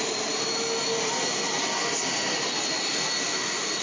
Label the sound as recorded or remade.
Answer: recorded